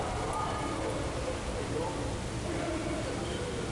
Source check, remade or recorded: recorded